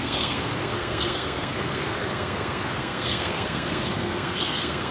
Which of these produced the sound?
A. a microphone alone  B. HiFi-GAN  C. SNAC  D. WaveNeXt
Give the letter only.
C